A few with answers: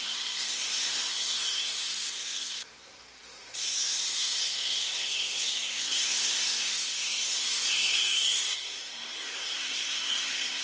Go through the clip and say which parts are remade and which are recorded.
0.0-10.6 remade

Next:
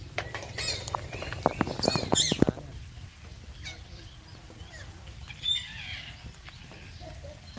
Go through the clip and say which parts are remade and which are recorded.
0.0-3.1 remade; 3.1-4.4 recorded; 4.4-7.6 remade

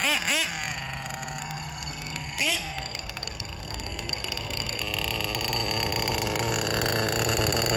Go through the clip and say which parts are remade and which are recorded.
0.0-1.4 recorded; 1.4-4.8 remade; 4.8-7.8 recorded